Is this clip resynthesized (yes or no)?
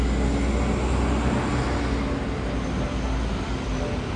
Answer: no